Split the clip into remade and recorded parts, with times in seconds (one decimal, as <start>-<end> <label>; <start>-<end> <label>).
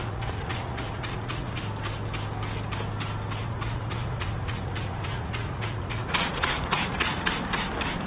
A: 0.0-1.6 remade; 1.6-3.4 recorded; 3.4-7.3 remade; 7.3-8.1 recorded